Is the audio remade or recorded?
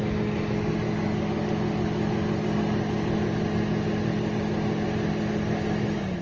recorded